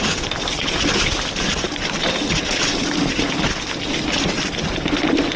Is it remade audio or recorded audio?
remade